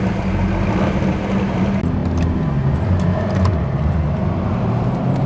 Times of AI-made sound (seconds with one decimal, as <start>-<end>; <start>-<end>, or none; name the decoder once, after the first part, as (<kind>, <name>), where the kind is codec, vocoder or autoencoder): none